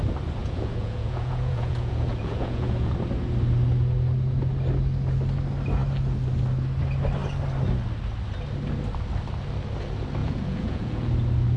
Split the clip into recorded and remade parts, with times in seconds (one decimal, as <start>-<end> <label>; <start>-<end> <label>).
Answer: 0.0-0.4 recorded; 0.4-2.9 remade; 2.9-10.2 recorded; 10.2-11.1 remade; 11.1-11.6 recorded